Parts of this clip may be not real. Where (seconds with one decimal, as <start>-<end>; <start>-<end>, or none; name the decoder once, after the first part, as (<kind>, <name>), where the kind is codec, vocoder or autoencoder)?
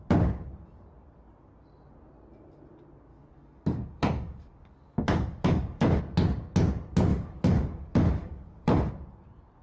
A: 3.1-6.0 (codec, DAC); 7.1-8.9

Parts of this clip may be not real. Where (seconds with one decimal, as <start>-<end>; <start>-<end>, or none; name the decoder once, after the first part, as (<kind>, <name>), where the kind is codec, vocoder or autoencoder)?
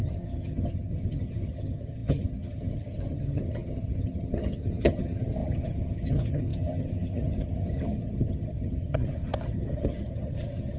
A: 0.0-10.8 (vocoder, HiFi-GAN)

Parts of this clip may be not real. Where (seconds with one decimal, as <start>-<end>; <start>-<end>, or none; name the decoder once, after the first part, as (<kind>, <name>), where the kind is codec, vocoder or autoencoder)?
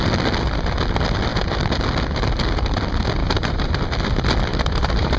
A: 3.2-3.7 (vocoder, BigVGAN v2); 4.5-5.2